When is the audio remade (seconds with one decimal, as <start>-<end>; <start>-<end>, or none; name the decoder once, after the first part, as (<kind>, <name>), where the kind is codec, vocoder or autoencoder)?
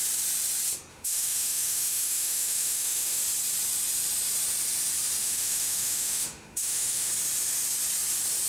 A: 0.9-3.2 (autoencoder, DAC-VAE); 5.2-7.1